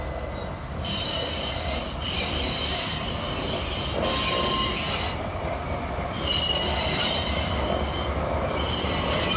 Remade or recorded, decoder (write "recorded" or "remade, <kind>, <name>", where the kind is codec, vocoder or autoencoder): recorded